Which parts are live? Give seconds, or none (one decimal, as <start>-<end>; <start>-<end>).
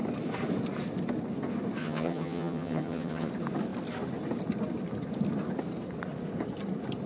0.0-1.8; 3.3-7.1